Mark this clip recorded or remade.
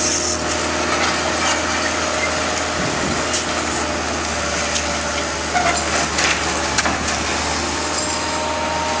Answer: recorded